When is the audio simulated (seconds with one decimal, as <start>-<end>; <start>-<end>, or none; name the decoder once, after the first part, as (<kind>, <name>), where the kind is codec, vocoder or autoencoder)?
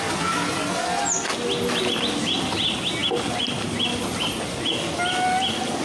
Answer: none